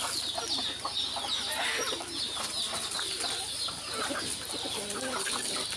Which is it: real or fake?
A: real